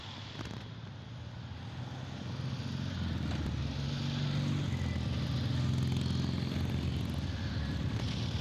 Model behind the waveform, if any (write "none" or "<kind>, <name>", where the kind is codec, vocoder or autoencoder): none